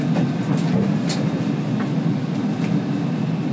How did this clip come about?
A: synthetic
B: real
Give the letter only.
B